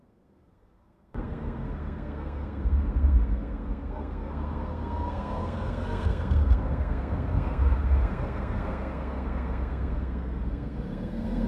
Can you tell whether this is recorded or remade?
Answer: remade